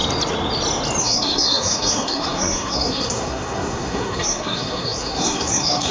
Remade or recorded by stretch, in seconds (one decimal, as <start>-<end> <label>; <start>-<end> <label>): 0.0-1.0 recorded; 1.0-5.9 remade